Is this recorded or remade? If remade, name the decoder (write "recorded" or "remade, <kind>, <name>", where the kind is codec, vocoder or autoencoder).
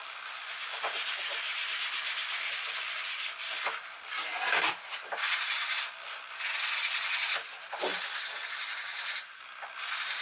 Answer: recorded